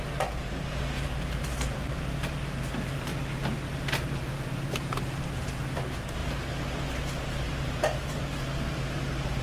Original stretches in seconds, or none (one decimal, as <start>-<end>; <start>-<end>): 3.1-4.7